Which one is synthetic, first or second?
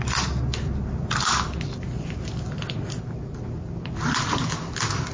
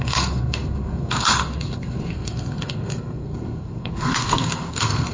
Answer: second